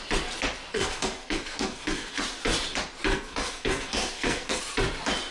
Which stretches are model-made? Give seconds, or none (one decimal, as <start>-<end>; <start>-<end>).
0.7-2.2; 3.1-4.6